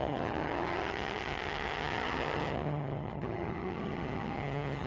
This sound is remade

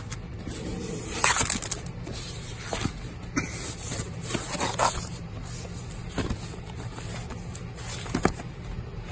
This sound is recorded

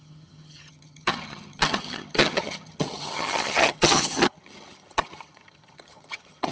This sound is remade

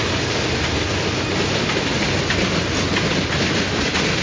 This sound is recorded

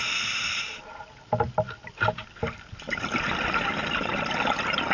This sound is recorded